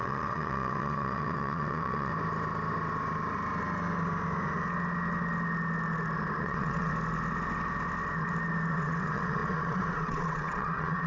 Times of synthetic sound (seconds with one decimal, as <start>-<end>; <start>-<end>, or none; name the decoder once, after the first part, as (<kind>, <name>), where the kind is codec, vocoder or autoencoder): 0.0-2.1 (vocoder, WaveNeXt); 6.4-6.9; 8.7-11.1